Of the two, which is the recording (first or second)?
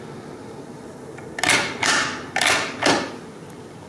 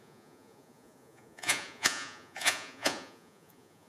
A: first